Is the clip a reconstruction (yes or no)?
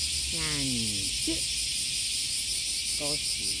no